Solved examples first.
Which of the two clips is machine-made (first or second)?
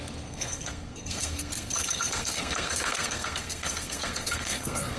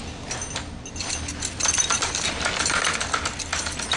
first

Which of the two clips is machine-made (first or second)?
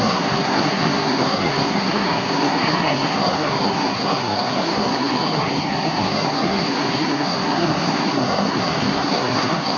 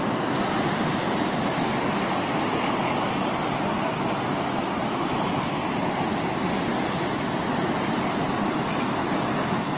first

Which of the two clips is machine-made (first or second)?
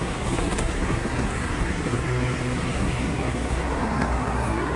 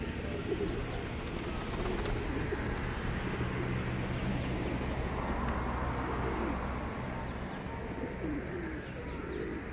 first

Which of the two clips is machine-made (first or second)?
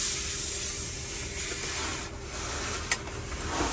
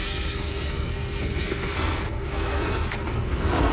second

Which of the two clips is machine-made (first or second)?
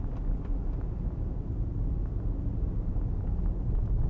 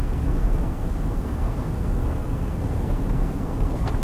second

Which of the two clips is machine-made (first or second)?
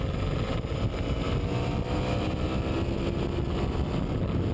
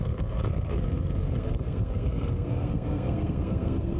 second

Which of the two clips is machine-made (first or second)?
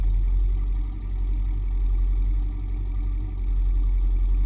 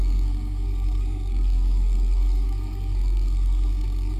second